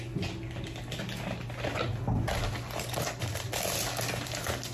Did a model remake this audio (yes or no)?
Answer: no